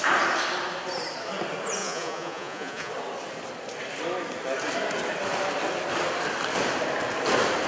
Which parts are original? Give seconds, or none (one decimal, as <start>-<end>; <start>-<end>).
0.0-1.8; 2.9-7.7

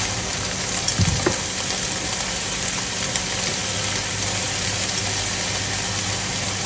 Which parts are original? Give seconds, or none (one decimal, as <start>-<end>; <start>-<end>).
0.0-6.7

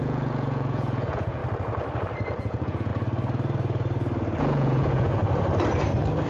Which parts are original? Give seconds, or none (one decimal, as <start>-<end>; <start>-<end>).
1.4-2.4; 2.9-4.4; 5.2-6.3

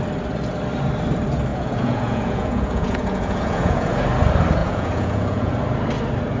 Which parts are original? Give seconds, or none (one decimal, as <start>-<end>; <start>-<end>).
0.0-1.5; 3.9-4.6; 5.5-6.4